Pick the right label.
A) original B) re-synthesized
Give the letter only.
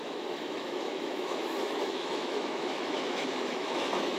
B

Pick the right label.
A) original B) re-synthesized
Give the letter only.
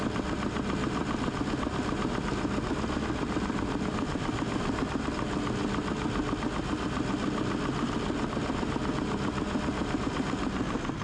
A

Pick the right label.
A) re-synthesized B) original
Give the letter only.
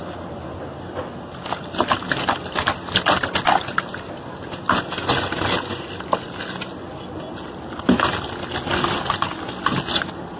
B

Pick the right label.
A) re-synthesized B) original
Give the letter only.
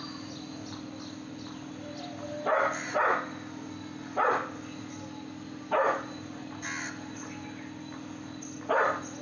B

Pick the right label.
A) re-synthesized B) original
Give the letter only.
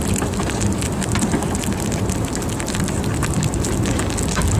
B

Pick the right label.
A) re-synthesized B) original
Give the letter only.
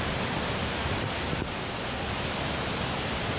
B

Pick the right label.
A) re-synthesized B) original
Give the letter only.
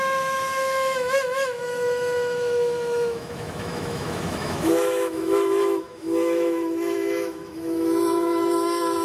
A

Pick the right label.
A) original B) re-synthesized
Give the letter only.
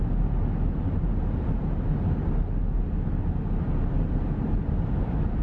A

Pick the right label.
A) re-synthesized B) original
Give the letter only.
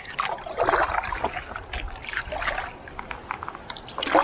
B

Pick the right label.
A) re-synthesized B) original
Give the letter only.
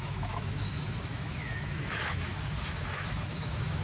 A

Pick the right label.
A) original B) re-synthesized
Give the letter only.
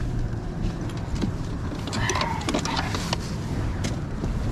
A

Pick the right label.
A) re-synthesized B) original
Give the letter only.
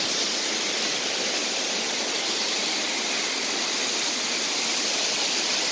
B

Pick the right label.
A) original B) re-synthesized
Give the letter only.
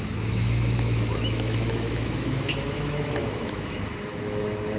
B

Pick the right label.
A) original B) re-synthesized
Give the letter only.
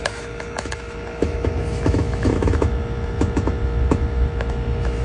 B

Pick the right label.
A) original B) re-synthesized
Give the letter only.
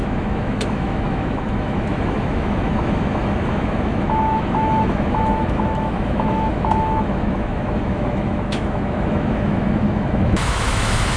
B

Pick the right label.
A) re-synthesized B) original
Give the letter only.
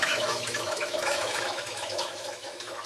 A